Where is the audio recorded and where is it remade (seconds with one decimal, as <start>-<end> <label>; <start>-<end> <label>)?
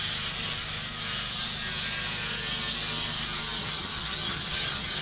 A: 0.0-3.6 recorded; 3.6-5.0 remade